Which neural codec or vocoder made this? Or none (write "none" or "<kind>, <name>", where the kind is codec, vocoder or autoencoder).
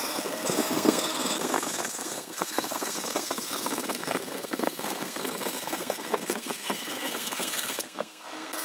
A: codec, SNAC